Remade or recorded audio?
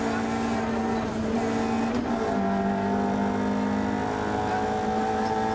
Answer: recorded